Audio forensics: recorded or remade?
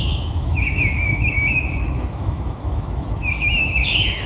remade